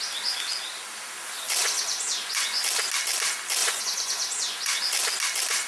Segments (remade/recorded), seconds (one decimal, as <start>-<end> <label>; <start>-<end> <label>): 0.0-1.6 recorded; 1.6-2.6 remade; 2.6-3.6 recorded; 3.6-4.8 remade; 4.8-5.7 recorded